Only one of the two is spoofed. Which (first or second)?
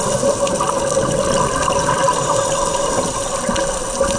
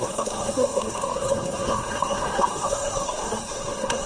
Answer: second